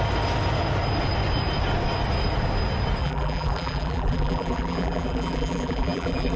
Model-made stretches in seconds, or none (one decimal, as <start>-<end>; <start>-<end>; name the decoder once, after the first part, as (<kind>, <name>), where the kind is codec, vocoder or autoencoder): 3.0-6.4 (vocoder, BigVGAN v2)